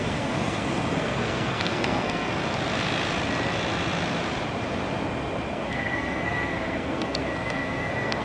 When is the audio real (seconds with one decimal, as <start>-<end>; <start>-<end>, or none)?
2.3-5.5